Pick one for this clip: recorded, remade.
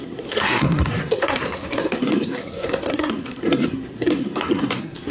remade